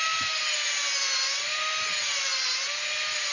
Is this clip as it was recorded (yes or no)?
yes